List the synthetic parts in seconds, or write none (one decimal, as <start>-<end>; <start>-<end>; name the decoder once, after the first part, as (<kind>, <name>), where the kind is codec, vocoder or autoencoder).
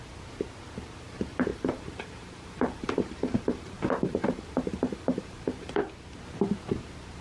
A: 1.5-5.8 (vocoder, BigVGAN v2)